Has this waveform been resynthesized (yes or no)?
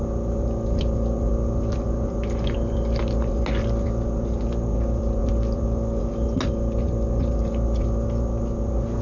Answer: no